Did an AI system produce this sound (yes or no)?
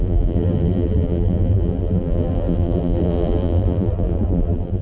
yes